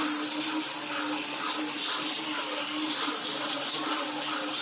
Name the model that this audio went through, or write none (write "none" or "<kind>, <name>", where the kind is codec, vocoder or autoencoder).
none